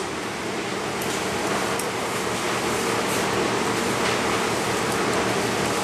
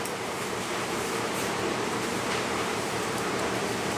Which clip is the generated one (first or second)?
second